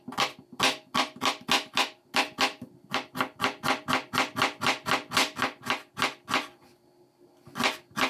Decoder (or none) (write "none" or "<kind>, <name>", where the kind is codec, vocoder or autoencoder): none